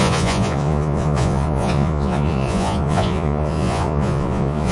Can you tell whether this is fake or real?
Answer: fake